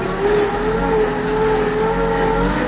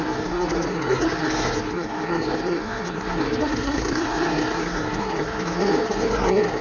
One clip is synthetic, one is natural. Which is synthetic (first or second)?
second